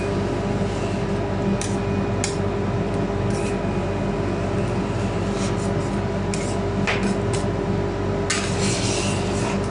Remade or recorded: recorded